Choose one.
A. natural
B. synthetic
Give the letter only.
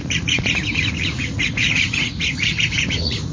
B